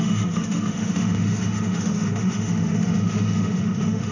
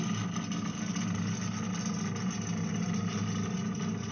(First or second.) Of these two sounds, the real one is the second